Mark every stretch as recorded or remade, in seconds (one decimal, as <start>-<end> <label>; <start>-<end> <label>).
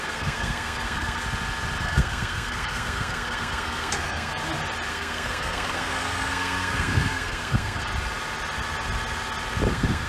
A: 0.0-1.2 remade; 1.2-1.8 recorded; 1.8-4.3 remade; 4.3-4.9 recorded; 4.9-7.9 remade; 7.9-9.7 recorded; 9.7-10.1 remade